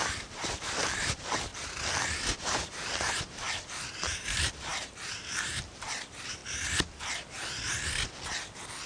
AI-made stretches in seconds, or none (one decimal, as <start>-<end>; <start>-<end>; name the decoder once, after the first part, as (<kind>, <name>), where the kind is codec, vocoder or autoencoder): 0.0-1.5 (vocoder, BigVGAN v2); 2.4-6.4